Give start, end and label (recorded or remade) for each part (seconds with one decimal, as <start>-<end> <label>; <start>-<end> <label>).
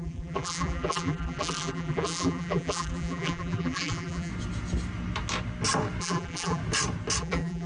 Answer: 0.0-4.3 remade; 4.3-6.0 recorded; 6.0-6.6 remade; 6.6-7.2 recorded; 7.2-7.7 remade